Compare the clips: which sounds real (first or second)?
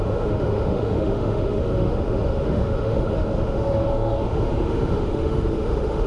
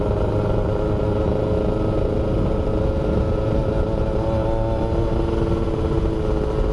second